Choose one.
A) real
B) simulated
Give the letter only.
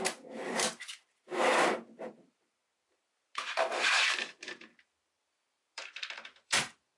B